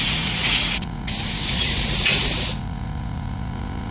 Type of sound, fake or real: fake